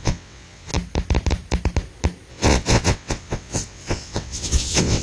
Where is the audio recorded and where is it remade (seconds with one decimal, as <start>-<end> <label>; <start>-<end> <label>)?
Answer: 0.0-0.7 remade; 0.7-2.3 recorded; 2.3-5.0 remade